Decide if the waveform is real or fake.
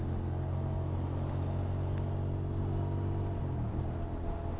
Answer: real